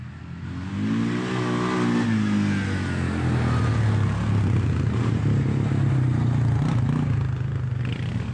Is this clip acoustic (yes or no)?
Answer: yes